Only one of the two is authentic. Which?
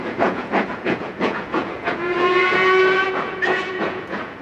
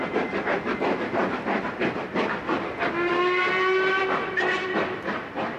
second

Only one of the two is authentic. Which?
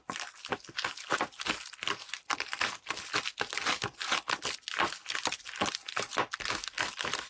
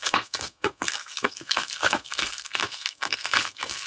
first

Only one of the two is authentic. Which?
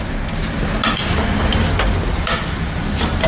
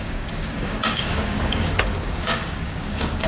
first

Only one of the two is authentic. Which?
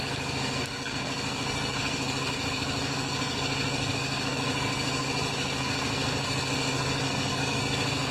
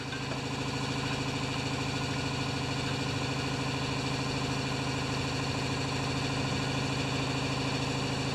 second